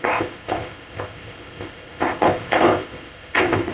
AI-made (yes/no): yes